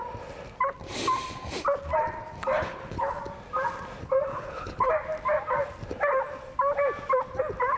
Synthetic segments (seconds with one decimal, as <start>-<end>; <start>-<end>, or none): 2.6-3.2; 4.3-4.9

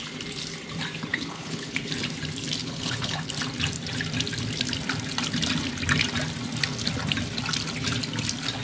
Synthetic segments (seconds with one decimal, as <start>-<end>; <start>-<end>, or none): 1.1-1.9; 2.6-3.3

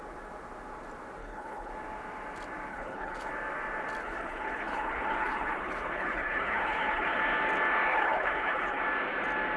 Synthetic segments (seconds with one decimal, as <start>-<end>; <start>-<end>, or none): 1.2-1.7; 2.7-3.3; 4.0-7.2; 7.9-8.8